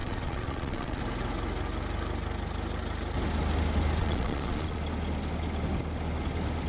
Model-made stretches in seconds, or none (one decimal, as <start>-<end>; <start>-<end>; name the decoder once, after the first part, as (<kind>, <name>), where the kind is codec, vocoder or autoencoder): 0.0-1.0 (vocoder, Vocos); 4.0-4.8